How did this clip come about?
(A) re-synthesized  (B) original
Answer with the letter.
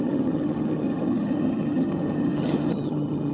A